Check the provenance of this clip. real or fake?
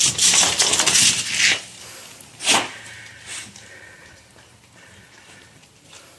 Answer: real